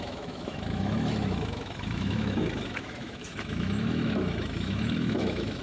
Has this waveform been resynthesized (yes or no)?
yes